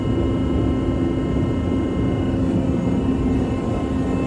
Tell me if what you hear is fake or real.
real